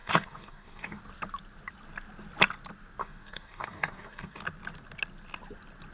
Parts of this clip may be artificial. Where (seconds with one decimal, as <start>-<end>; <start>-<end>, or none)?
0.0-1.0; 3.0-4.4